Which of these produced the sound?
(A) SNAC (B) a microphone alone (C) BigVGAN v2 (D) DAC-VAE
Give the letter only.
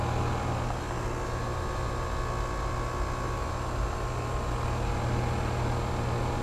B